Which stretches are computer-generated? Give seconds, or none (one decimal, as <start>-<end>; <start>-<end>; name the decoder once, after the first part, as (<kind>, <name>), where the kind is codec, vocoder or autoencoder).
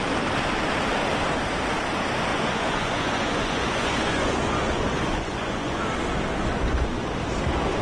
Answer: 2.3-5.8 (vocoder, Vocos); 6.4-7.1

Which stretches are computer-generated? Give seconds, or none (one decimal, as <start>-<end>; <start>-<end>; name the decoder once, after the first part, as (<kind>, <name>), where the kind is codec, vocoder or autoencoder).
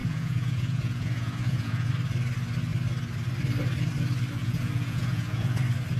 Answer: 0.0-1.9 (vocoder, Vocos); 4.4-5.6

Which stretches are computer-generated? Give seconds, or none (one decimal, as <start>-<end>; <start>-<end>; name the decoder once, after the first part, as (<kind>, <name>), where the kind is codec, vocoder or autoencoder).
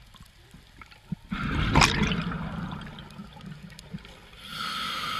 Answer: none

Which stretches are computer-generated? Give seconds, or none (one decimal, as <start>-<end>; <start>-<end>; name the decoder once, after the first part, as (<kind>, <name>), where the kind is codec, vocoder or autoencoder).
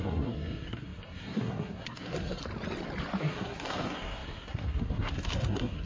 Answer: 0.0-2.4 (codec, SNAC); 3.2-5.9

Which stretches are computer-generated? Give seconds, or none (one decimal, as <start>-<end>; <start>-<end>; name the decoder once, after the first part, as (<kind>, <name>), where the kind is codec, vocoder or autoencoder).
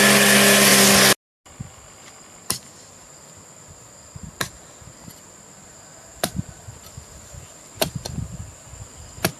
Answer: 6.1-8.1 (vocoder, BigVGAN v2)